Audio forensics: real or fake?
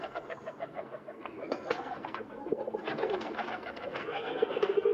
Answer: fake